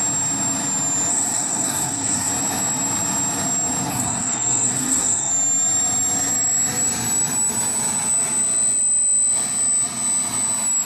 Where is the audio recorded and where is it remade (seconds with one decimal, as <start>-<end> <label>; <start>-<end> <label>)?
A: 0.0-1.1 recorded; 1.1-2.3 remade; 2.3-3.9 recorded; 3.9-5.3 remade; 5.3-10.9 recorded